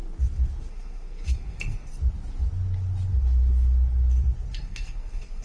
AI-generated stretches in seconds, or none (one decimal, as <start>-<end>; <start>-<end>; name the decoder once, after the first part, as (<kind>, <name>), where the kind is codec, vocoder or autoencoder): 0.7-1.9 (codec, SNAC); 4.5-5.4